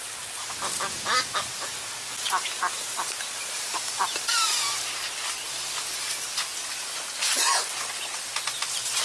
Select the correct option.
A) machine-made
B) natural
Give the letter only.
B